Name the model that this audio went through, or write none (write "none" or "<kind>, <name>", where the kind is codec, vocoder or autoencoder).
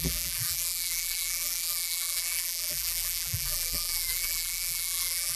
vocoder, BigVGAN v2